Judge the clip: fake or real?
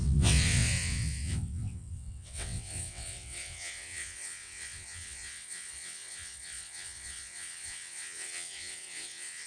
fake